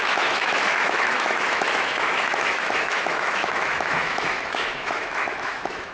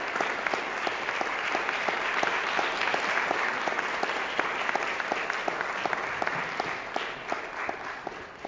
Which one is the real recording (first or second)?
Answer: second